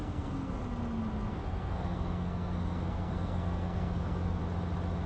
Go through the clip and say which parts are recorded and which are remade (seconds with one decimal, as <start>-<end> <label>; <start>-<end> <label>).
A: 0.0-0.5 remade; 0.5-1.3 recorded; 1.3-4.4 remade; 4.4-5.1 recorded